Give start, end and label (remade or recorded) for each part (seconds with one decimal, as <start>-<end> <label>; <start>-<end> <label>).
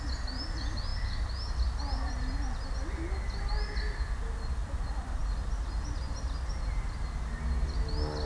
0.0-8.3 recorded